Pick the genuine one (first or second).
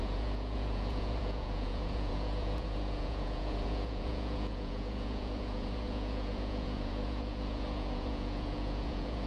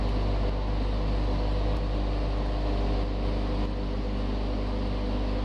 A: second